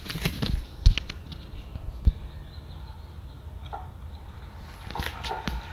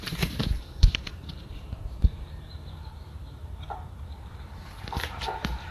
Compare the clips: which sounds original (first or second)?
first